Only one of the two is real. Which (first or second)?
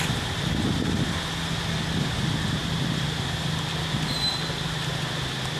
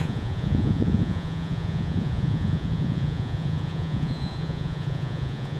first